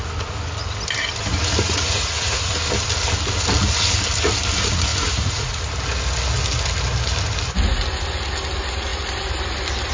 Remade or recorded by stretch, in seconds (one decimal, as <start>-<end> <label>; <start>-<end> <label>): 0.0-1.6 recorded; 1.6-2.5 remade; 2.5-4.9 recorded; 4.9-5.6 remade; 5.6-9.9 recorded